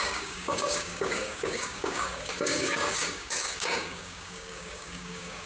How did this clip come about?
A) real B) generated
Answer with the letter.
B